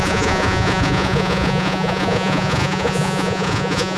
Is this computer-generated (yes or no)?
yes